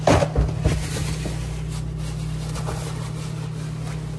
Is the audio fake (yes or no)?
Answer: no